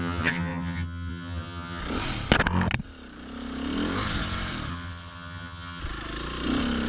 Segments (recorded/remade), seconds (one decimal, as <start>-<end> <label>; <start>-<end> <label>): 0.0-1.8 remade; 1.8-4.7 recorded; 4.7-5.8 remade; 5.8-6.9 recorded